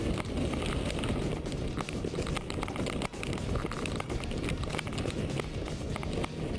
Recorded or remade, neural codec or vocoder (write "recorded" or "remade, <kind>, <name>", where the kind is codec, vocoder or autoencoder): recorded